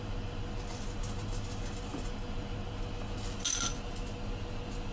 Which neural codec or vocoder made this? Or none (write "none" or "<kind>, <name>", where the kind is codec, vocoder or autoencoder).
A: none